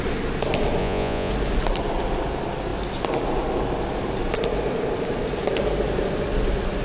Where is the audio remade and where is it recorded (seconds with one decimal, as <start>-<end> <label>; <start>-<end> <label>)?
0.0-0.8 recorded; 0.8-1.3 remade; 1.3-6.8 recorded